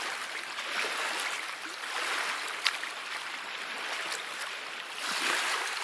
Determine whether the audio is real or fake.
real